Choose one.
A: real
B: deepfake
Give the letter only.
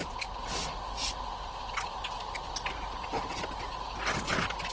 A